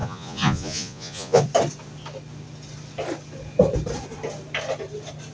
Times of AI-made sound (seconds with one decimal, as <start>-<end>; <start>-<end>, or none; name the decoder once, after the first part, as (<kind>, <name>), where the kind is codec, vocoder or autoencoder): 0.0-1.4 (vocoder, Vocos)